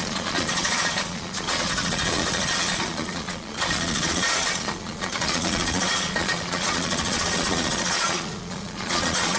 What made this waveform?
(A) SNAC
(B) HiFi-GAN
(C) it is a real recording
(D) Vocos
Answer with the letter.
D